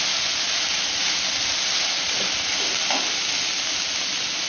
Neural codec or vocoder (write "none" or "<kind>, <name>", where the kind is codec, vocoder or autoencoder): none